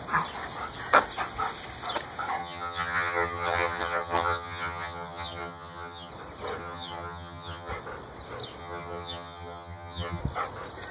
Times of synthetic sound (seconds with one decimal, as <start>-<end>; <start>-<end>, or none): 2.4-6.1; 6.6-7.7; 8.6-10.2